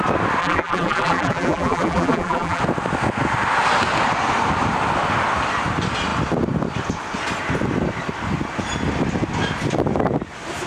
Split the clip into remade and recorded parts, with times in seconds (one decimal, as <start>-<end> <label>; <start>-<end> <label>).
0.0-0.4 recorded; 0.4-2.6 remade; 2.6-10.7 recorded